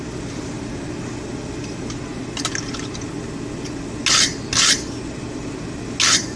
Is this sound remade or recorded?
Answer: recorded